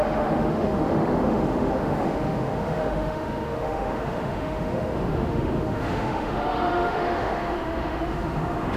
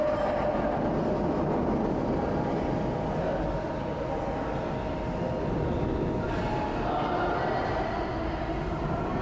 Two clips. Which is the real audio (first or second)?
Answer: second